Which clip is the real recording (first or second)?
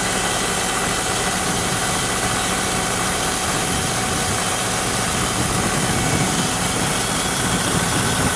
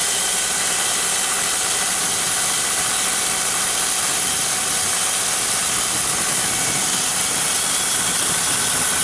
first